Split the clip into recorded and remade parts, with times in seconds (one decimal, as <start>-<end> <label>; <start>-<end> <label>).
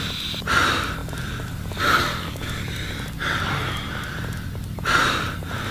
0.0-5.7 recorded